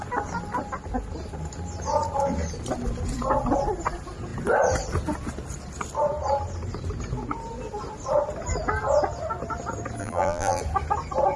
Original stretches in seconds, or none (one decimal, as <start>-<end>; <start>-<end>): 0.0-10.0; 10.6-11.4